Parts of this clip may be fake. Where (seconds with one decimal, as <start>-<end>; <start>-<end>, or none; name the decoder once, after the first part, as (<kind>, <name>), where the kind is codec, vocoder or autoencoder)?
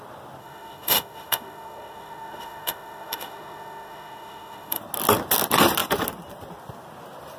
0.4-4.8 (autoencoder, DAC-VAE)